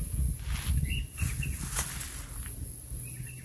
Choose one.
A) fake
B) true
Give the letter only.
B